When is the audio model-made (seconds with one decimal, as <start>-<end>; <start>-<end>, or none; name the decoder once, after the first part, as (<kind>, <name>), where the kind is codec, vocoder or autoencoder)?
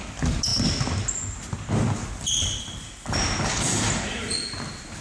none